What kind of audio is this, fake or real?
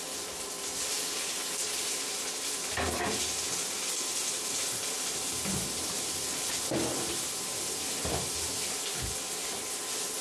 real